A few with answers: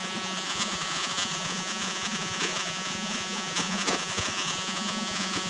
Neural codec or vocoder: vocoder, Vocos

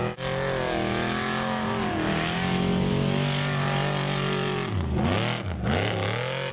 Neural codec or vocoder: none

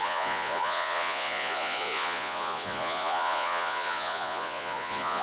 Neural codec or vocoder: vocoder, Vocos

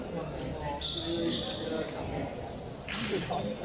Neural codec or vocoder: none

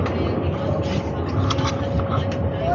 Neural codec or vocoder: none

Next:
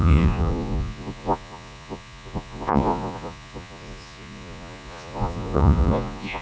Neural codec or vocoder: vocoder, Vocos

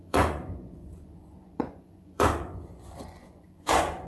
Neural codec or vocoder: vocoder, Vocos